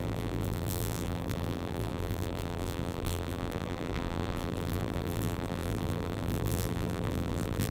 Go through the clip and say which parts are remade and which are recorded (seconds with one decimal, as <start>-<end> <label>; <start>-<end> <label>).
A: 0.0-7.7 remade